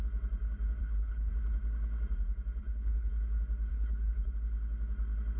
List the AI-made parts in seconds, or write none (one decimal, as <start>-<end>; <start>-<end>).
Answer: 0.8-1.3; 2.6-3.1; 3.7-4.3